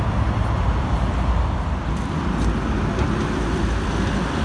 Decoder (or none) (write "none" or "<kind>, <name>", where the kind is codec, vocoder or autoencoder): none